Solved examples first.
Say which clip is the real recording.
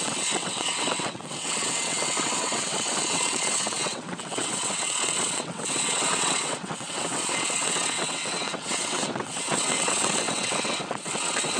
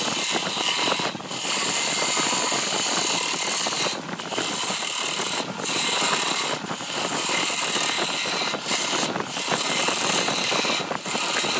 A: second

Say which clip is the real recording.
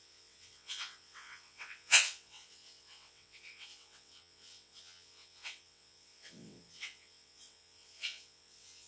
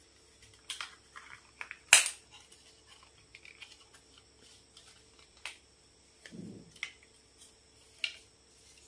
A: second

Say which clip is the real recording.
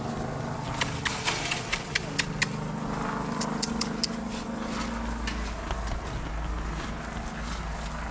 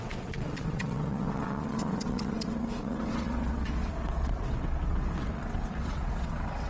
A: first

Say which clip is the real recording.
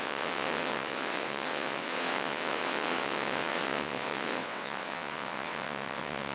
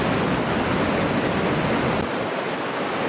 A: second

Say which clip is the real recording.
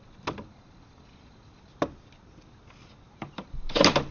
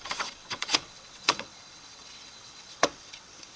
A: first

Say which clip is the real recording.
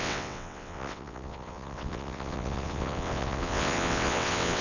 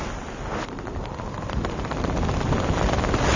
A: second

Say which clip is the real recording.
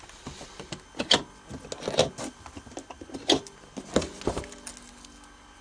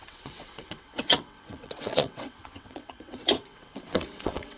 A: first